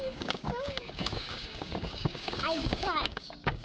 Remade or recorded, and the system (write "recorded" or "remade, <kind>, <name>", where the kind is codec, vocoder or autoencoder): remade, codec, DAC